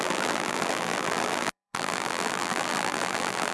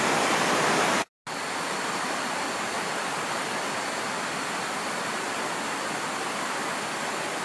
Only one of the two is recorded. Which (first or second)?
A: second